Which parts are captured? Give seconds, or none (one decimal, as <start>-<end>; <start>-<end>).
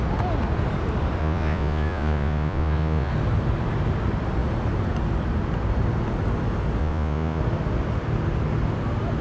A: 0.0-1.2; 3.1-6.8; 7.4-9.2